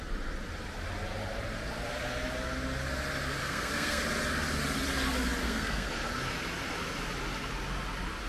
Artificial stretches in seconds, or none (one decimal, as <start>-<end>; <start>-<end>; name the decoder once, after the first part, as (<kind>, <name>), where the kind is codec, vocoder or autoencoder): 3.4-4.0 (codec, SNAC); 5.4-5.9